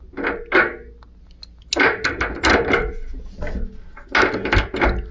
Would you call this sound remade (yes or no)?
no